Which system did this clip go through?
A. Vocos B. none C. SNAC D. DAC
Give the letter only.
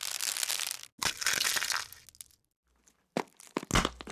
B